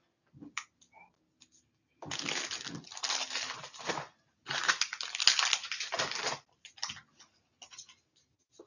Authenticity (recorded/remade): recorded